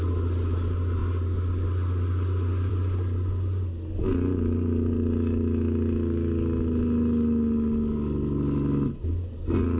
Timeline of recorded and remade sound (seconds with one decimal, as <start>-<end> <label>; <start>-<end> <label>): 0.0-9.8 recorded